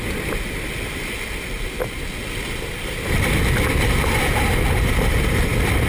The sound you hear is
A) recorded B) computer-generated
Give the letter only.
A